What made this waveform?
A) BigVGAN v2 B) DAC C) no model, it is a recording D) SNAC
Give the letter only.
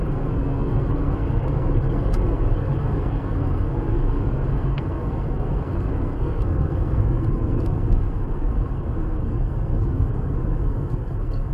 D